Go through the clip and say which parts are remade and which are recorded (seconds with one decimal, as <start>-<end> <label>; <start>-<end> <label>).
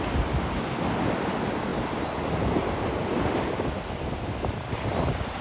0.0-5.4 recorded